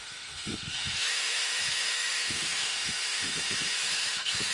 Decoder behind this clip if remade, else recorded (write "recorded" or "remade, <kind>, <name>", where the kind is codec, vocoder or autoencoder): remade, autoencoder, DAC-VAE